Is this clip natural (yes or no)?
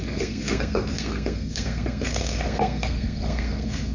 no